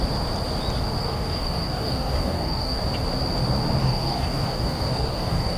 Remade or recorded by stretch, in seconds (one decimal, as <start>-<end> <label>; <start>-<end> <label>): 0.0-1.0 recorded; 1.0-2.8 remade; 2.8-3.8 recorded; 3.8-5.6 remade